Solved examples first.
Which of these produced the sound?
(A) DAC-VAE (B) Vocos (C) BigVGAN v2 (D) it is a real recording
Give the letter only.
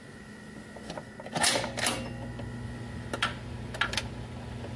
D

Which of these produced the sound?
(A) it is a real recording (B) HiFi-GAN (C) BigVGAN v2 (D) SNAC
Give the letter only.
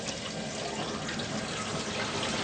A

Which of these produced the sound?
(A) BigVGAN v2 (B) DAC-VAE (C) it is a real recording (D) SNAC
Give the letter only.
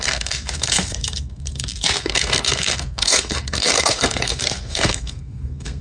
D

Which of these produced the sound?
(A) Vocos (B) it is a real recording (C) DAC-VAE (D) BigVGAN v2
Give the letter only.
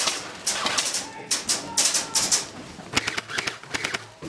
B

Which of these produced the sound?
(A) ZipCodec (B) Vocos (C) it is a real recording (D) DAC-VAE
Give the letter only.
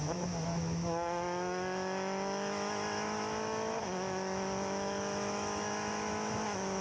D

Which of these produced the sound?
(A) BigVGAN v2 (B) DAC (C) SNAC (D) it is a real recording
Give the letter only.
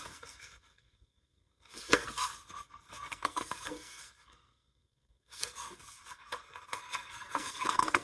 C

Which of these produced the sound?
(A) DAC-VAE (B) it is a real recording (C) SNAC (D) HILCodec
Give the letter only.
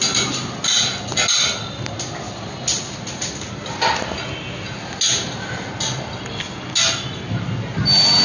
B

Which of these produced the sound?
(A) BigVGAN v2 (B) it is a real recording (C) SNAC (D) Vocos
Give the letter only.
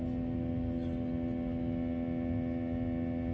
B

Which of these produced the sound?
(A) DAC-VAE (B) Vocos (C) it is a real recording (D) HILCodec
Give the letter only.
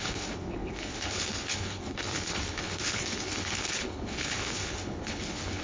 D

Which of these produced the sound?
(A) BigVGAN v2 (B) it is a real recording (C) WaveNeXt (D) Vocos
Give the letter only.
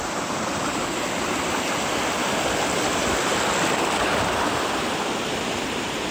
B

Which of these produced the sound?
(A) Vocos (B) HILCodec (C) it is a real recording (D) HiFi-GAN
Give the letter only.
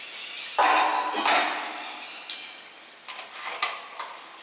C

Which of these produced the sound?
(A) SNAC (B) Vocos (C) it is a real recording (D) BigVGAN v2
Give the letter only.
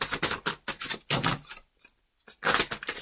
C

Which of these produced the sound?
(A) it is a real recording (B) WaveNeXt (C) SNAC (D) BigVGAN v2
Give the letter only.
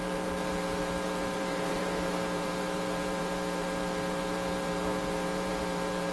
D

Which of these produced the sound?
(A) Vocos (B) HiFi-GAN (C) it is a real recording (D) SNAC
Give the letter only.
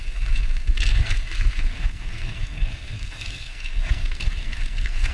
D